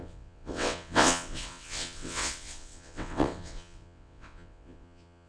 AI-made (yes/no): yes